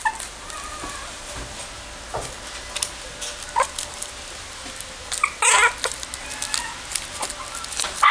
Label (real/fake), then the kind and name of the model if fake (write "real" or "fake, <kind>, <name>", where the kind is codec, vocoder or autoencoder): real